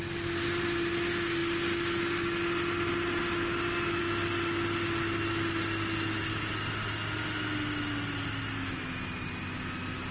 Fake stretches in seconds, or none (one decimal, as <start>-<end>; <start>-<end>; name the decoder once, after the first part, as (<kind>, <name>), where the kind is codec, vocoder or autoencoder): none

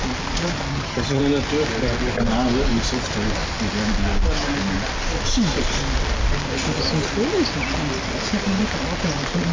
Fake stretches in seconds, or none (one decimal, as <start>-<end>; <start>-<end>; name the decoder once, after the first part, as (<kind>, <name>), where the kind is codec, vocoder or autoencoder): 0.7-1.2 (vocoder, HiFi-GAN)

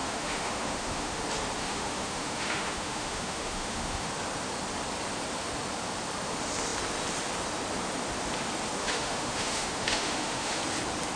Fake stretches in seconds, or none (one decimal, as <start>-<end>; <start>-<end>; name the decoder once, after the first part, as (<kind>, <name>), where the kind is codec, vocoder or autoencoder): 0.0-1.2 (autoencoder, DAC-VAE); 1.6-4.1; 8.8-10.6

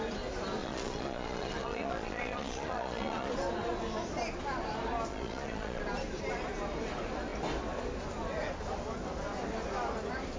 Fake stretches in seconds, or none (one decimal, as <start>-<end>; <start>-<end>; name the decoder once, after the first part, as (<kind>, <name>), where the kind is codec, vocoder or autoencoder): 0.6-3.3 (vocoder, Vocos); 5.1-5.8

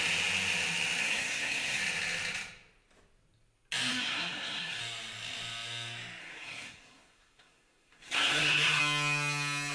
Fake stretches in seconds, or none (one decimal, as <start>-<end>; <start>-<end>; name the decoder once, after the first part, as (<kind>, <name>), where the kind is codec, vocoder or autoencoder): 1.0-1.8 (codec, SNAC); 3.9-4.8; 6.2-8.8